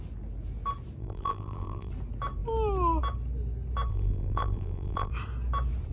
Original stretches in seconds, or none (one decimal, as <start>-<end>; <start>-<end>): 0.0-1.0; 1.9-3.9; 5.1-5.9